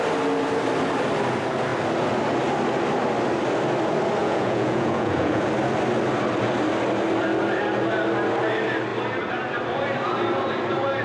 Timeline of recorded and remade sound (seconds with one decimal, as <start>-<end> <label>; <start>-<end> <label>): 0.0-4.2 recorded; 4.2-5.5 remade; 5.5-11.0 recorded

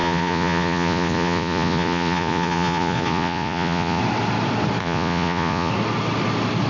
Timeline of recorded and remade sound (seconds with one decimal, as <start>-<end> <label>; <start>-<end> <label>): 0.0-4.0 remade; 4.0-4.8 recorded; 4.8-5.7 remade; 5.7-6.7 recorded

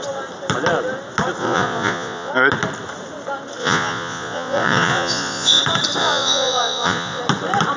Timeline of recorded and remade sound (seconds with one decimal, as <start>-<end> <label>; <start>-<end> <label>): 0.0-1.4 recorded; 1.4-2.3 remade; 2.3-3.6 recorded; 3.6-5.6 remade; 5.6-6.0 recorded; 6.0-7.2 remade; 7.2-7.8 recorded

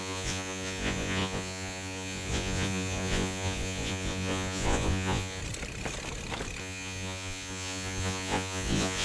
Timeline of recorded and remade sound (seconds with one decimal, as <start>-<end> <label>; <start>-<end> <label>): 0.0-5.4 remade; 5.4-6.6 recorded; 6.6-9.0 remade

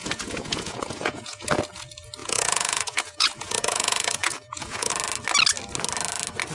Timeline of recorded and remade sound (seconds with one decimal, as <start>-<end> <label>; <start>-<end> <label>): 0.0-1.6 remade; 1.6-2.2 recorded; 2.2-4.9 remade; 4.9-6.5 recorded

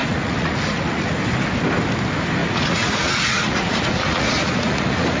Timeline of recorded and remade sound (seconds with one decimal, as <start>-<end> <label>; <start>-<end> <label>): 0.0-1.2 remade; 1.2-2.4 recorded; 2.4-5.2 remade

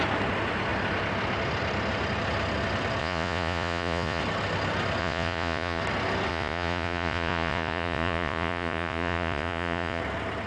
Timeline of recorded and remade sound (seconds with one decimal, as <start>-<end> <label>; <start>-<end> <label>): 0.0-3.0 recorded; 3.0-4.2 remade; 4.2-5.0 recorded; 5.0-5.8 remade; 5.8-6.3 recorded; 6.3-10.0 remade; 10.0-10.5 recorded

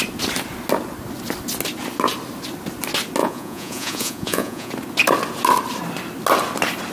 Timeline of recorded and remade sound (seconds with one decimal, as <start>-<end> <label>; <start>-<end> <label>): 0.0-3.2 recorded; 3.2-4.7 remade; 4.7-6.9 recorded